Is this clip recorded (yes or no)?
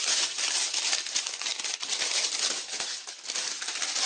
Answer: yes